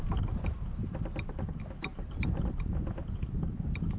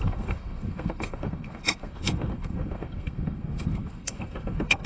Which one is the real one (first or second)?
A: first